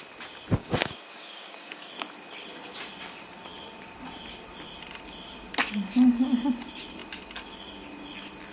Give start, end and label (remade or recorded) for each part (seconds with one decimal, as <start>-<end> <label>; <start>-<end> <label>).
0.0-0.6 recorded; 0.6-1.9 remade; 1.9-8.5 recorded